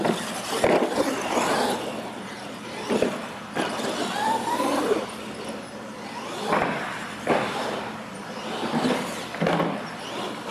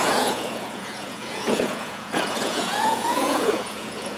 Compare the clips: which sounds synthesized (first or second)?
second